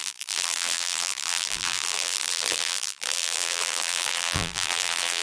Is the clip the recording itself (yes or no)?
no